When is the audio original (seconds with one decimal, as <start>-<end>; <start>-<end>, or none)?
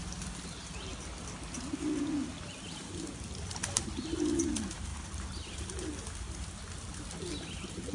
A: 0.0-4.9; 5.7-7.9